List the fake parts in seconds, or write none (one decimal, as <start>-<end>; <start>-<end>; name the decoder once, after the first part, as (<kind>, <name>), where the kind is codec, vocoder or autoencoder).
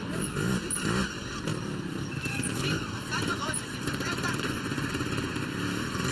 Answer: 3.3-4.9 (vocoder, Vocos)